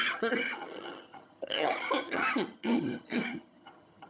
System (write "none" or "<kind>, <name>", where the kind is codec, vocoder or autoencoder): vocoder, HiFi-GAN